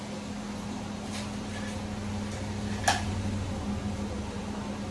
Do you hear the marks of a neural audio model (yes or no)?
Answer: no